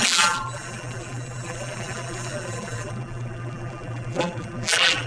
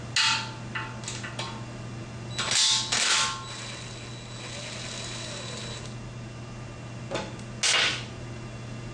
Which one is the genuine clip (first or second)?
second